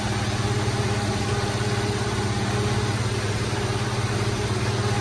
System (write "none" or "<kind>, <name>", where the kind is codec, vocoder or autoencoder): none